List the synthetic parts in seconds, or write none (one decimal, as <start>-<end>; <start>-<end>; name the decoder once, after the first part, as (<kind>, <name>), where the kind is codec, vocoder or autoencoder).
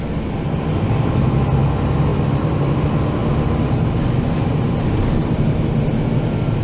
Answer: 3.2-4.1 (vocoder, BigVGAN v2)